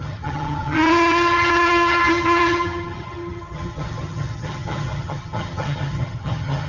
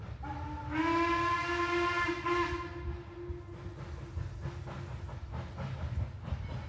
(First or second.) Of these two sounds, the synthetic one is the first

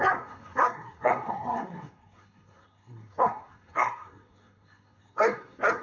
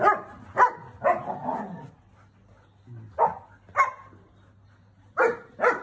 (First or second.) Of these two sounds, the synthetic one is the first